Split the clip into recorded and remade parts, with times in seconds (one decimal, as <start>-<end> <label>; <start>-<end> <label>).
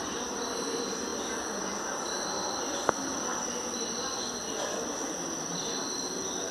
0.0-6.5 recorded